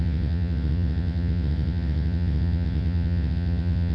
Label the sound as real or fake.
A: fake